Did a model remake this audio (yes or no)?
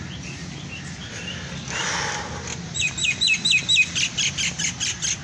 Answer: no